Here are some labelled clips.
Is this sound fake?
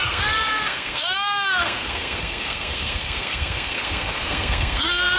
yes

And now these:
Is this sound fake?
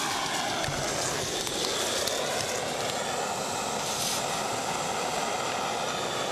no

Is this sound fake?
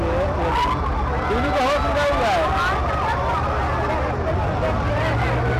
no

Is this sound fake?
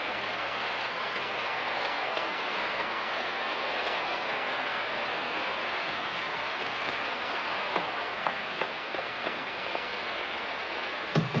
yes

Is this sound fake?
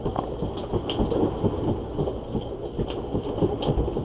no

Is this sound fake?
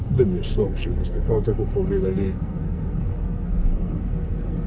yes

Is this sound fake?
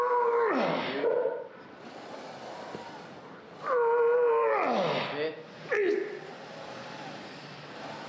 no